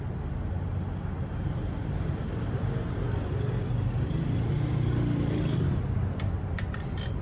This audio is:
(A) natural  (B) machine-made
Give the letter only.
A